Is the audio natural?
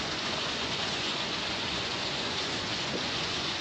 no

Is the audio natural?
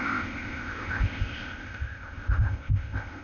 no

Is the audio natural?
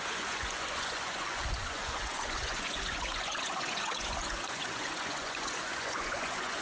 no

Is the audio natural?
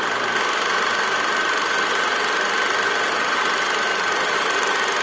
yes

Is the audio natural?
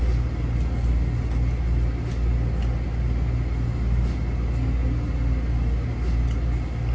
yes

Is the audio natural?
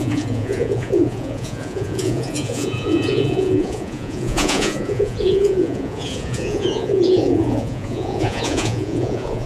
no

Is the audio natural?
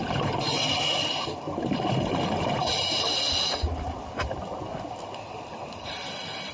yes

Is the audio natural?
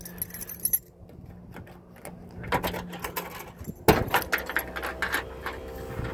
yes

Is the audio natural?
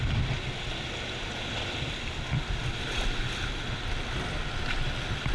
yes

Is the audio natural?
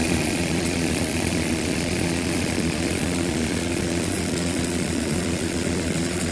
no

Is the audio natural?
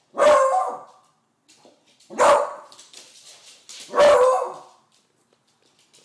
yes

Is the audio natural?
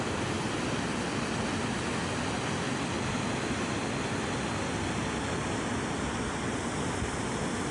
yes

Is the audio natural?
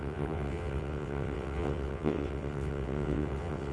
no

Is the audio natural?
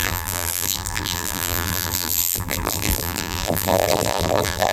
no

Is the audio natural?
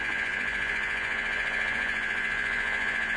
no